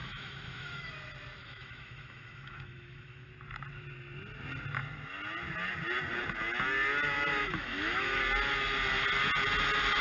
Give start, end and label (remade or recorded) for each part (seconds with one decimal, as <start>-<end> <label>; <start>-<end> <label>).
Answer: 0.0-0.9 remade; 0.9-1.4 recorded; 1.4-3.3 remade; 3.3-7.3 recorded; 7.3-8.2 remade; 8.2-10.0 recorded